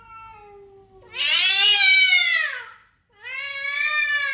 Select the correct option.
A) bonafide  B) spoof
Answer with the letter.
A